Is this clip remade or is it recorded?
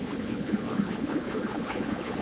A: remade